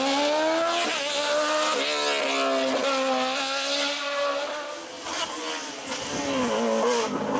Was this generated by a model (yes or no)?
no